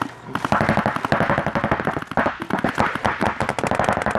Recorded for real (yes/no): yes